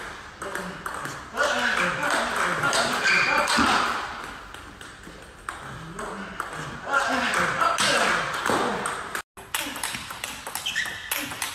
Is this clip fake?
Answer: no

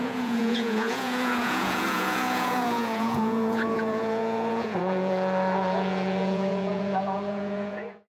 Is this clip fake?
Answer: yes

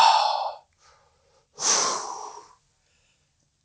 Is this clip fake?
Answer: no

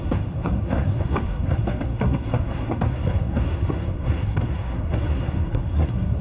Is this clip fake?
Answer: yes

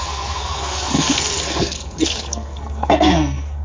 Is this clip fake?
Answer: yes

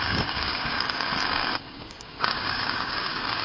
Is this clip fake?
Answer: yes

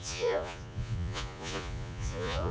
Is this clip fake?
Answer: yes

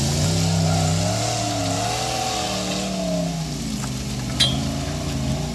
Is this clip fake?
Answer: no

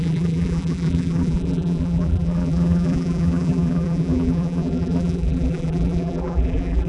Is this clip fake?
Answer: yes